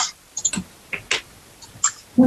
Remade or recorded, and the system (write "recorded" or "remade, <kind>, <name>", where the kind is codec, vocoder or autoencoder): recorded